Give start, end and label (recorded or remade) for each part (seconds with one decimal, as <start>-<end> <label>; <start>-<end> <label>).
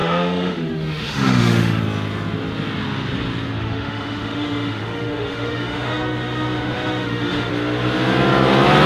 0.0-1.8 remade; 1.8-3.6 recorded; 3.6-7.5 remade; 7.5-8.9 recorded